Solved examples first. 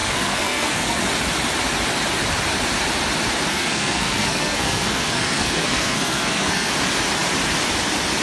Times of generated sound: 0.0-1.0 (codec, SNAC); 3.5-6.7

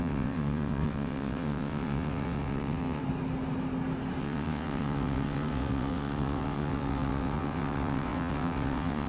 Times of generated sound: 0.0-3.0 (vocoder, WaveNeXt); 4.2-9.1

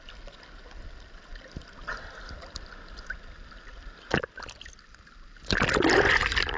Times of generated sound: none

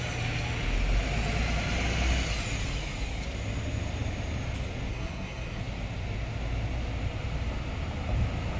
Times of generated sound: 4.9-5.6 (codec, SNAC)

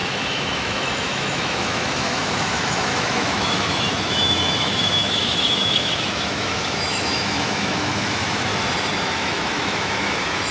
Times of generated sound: 0.0-8.5 (autoencoder, DAC-VAE); 9.0-10.5